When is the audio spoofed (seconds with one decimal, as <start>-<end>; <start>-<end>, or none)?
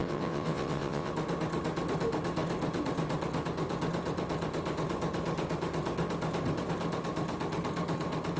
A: 0.0-1.1